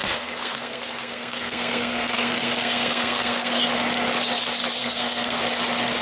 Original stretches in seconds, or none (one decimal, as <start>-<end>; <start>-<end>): 3.6-4.8; 5.4-6.0